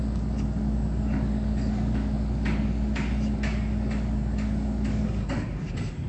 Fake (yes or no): yes